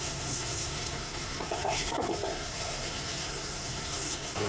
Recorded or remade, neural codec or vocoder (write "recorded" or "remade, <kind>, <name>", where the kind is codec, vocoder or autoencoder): remade, codec, SNAC